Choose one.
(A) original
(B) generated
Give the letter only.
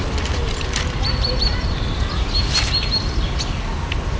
B